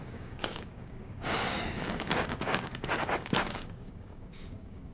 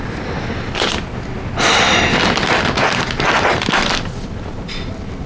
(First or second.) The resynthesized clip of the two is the first